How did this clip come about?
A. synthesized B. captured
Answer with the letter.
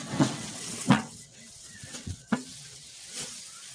A